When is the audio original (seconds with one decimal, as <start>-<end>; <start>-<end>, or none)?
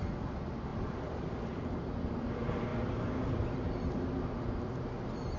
0.0-0.7; 1.8-5.4